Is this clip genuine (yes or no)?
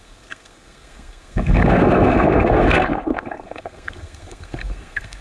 no